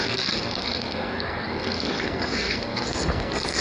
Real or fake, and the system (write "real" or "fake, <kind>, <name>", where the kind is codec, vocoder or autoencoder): fake, codec, SNAC